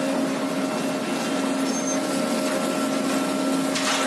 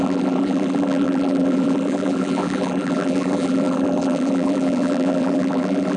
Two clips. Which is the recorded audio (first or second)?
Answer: first